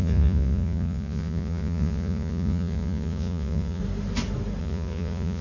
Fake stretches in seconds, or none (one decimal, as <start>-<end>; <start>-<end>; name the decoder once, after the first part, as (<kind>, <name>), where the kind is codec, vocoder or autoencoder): 0.0-3.8 (vocoder, Vocos); 4.6-5.4

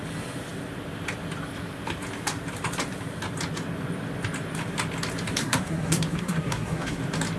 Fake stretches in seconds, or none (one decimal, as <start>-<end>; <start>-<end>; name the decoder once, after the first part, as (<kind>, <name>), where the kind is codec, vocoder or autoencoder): 5.4-7.0 (codec, SNAC)